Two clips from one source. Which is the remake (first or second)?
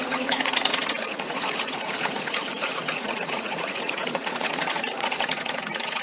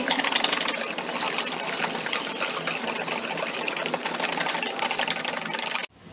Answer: first